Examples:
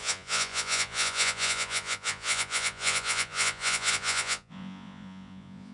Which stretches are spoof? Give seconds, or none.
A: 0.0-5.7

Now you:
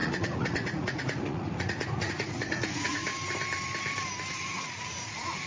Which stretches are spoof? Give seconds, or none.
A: 0.0-3.1; 4.3-5.5

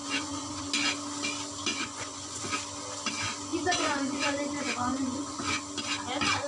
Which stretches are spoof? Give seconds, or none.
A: 0.0-0.7; 1.7-2.4; 3.5-4.4; 4.9-5.6

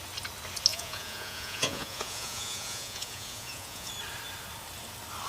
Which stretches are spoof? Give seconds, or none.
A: 0.7-3.9